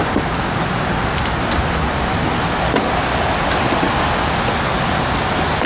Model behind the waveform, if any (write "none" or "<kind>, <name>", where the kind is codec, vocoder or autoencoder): none